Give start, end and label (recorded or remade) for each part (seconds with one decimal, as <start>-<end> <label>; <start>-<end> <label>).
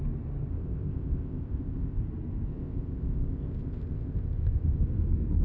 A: 0.0-0.5 recorded; 0.5-2.0 remade; 2.0-2.5 recorded; 2.5-4.8 remade; 4.8-5.4 recorded